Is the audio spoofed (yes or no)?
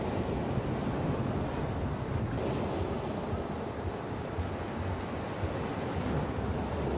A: no